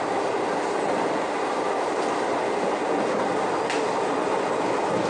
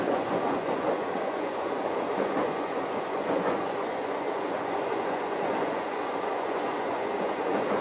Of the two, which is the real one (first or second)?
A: first